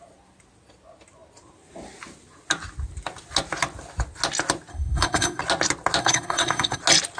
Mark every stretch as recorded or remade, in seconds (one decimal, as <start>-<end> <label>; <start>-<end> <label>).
0.0-4.7 recorded; 4.7-5.4 remade; 5.4-6.0 recorded; 6.0-6.8 remade; 6.8-7.2 recorded